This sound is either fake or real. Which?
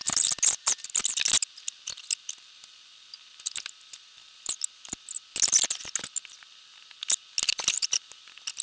real